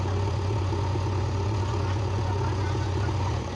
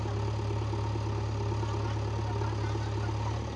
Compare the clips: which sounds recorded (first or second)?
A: second